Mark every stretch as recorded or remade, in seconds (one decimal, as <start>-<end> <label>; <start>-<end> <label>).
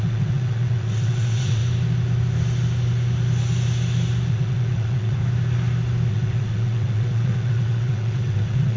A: 0.0-1.6 remade; 1.6-4.3 recorded; 4.3-5.2 remade; 5.2-6.1 recorded; 6.1-8.8 remade